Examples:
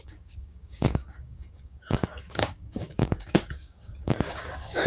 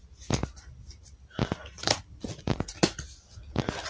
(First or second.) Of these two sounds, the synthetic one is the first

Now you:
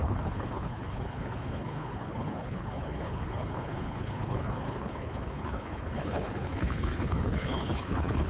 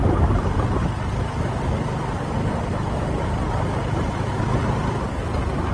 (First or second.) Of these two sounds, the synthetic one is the first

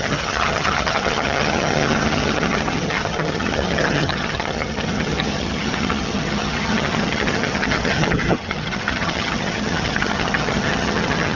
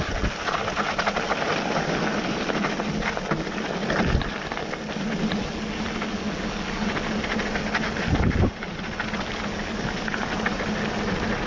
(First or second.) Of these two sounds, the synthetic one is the first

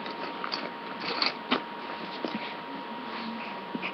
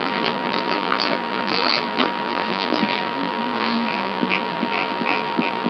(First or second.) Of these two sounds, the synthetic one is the second